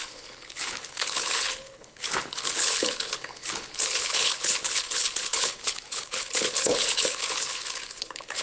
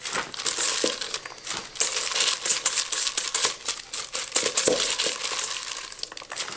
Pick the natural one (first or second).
second